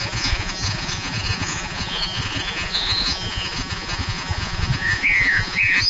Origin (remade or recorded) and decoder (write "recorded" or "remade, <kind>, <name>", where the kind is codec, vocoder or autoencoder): remade, vocoder, Vocos